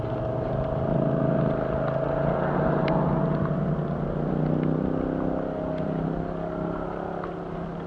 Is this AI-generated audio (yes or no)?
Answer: no